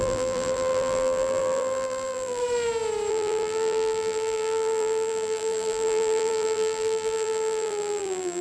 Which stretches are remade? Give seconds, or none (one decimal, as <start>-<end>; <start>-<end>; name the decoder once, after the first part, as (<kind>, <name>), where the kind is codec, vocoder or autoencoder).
0.0-2.4 (vocoder, BigVGAN v2); 3.1-8.4